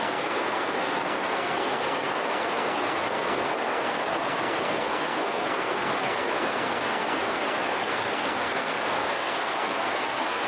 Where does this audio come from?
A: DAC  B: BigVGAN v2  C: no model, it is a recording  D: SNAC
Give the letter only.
D